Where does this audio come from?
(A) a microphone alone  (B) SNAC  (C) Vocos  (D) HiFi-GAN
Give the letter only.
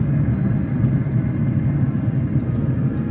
A